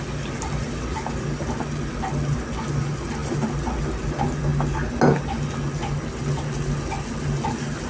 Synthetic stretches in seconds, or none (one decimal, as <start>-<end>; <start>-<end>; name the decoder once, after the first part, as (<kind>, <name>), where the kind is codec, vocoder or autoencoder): none